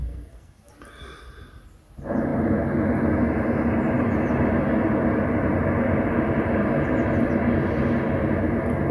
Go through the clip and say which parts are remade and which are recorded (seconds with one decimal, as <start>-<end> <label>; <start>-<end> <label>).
0.0-0.7 remade; 0.7-8.9 recorded